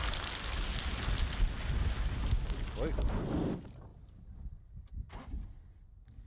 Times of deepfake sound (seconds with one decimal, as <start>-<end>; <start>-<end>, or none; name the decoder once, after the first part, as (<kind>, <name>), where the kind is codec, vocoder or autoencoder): 3.9-5.1 (vocoder, BigVGAN v2)